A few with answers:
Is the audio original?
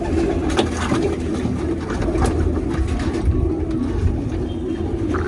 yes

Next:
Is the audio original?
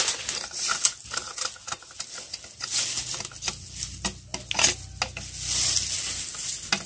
yes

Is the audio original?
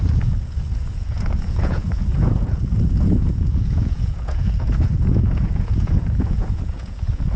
no